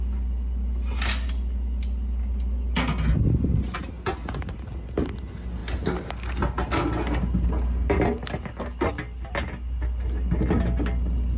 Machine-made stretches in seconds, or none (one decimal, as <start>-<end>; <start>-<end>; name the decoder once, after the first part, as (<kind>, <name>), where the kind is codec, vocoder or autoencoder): none